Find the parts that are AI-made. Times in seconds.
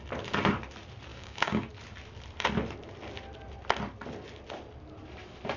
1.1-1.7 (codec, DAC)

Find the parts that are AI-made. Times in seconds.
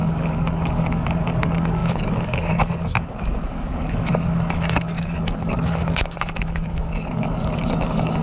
0.0-8.2 (codec, DAC)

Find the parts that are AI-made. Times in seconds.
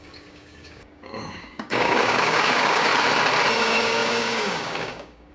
0.0-2.9 (codec, DAC); 3.6-5.3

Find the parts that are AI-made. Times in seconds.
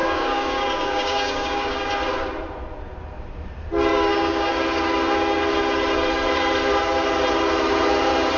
0.0-1.9 (codec, DAC); 3.9-4.5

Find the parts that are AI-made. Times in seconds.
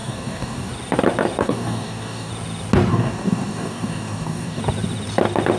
0.0-0.7 (codec, DAC); 1.4-2.3; 2.9-4.6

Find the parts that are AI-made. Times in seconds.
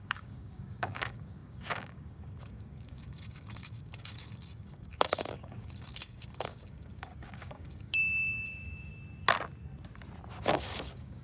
0.0-8.9 (codec, DAC); 10.3-11.2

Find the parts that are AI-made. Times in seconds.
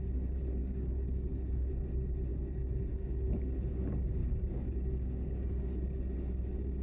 0.6-1.7 (codec, DAC); 2.3-3.4; 4.2-6.0